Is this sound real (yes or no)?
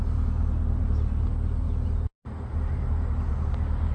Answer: yes